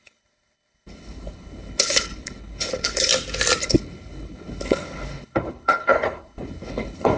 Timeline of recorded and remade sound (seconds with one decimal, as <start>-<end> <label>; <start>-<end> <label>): 0.0-3.1 remade; 3.1-3.6 recorded; 3.6-7.2 remade